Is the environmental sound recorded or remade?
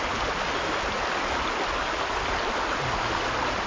recorded